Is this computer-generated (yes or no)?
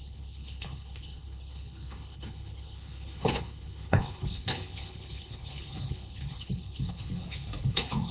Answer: yes